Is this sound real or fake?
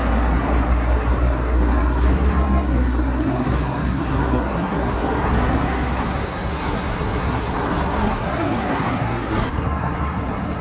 fake